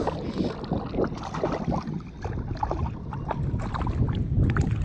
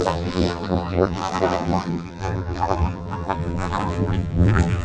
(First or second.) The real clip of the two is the first